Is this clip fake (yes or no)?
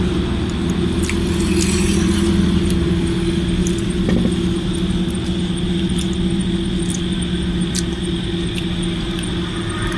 no